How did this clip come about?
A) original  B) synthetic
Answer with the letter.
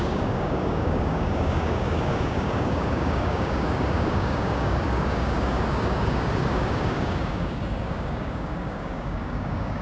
B